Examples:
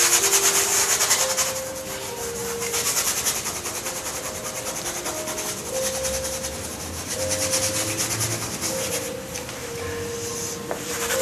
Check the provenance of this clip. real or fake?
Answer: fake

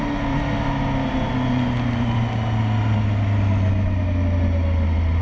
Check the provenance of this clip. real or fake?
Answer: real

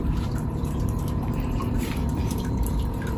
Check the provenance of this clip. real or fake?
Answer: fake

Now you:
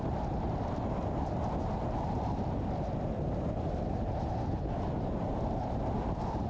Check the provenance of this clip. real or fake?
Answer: real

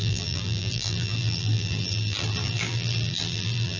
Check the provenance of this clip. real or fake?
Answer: fake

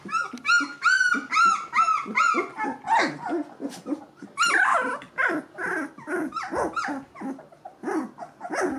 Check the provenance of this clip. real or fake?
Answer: real